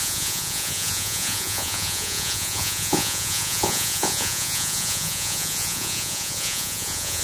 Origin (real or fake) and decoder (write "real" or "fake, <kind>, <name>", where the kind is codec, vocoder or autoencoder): fake, vocoder, Vocos